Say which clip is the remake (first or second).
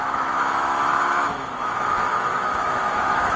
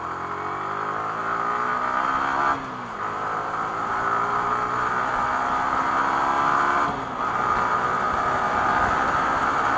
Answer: first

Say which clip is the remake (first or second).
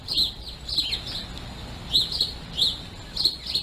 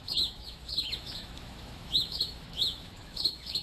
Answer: second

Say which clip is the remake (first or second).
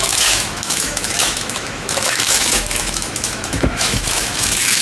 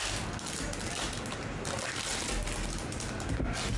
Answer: first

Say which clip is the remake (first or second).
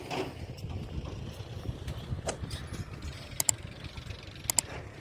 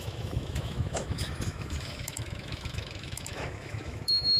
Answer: second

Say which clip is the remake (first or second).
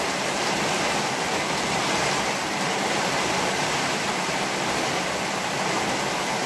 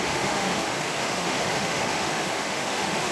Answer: second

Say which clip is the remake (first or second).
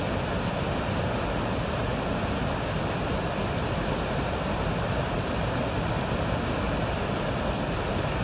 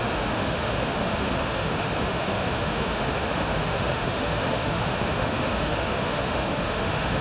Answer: second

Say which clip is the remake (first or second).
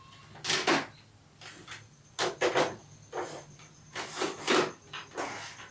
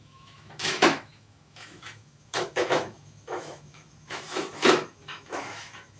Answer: second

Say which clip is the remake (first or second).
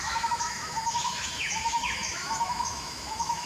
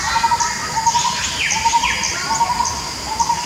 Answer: first